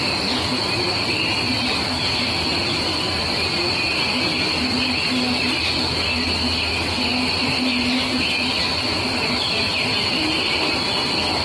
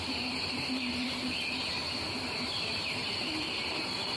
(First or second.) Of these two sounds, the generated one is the second